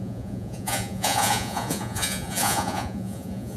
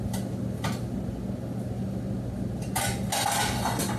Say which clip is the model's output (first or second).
first